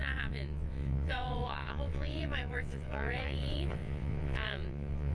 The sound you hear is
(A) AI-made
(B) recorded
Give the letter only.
A